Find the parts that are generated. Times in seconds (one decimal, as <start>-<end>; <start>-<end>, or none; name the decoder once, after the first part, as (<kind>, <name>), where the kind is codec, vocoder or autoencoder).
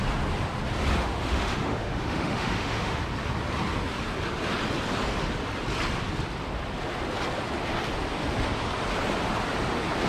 1.0-3.0 (autoencoder, DAC-VAE)